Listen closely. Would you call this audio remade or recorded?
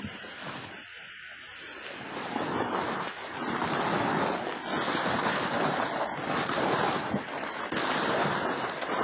recorded